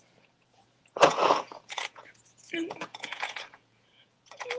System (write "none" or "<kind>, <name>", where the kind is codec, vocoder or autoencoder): vocoder, Vocos